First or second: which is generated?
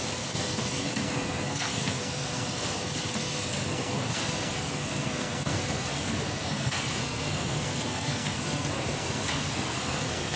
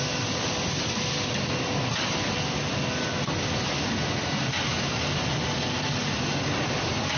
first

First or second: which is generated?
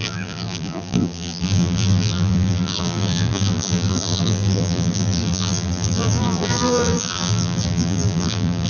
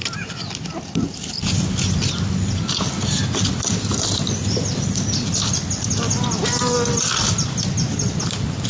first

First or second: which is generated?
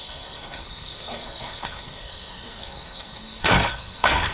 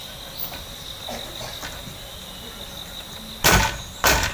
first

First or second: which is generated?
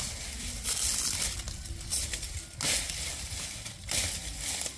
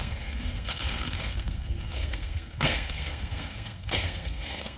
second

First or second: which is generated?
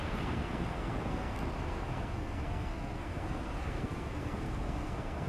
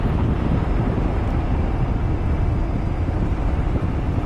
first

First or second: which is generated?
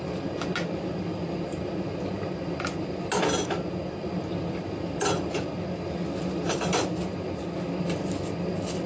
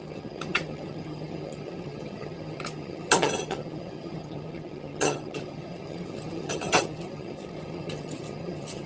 second